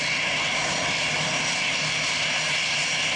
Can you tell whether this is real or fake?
real